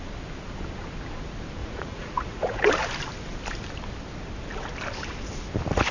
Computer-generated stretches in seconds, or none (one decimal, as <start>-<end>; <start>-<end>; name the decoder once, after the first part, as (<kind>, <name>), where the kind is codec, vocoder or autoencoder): 1.6-2.7 (vocoder, Vocos)